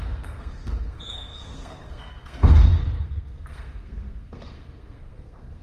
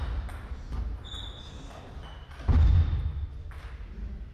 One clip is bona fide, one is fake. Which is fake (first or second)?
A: first